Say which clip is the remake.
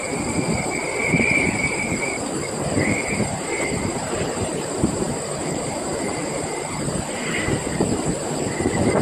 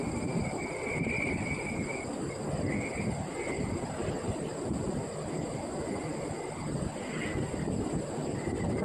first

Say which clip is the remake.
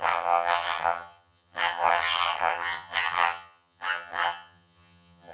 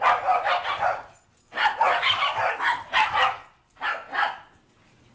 first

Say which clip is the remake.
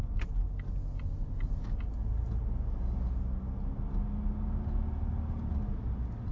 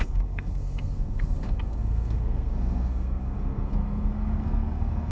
second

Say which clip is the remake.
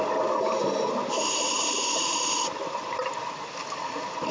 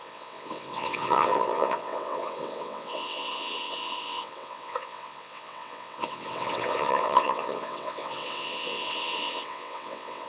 second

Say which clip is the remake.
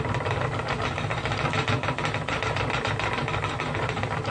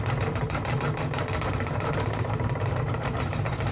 second